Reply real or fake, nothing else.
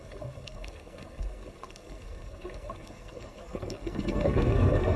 fake